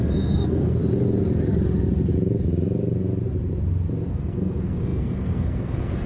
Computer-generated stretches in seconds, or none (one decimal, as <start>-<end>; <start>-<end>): 0.0-0.8; 4.1-6.1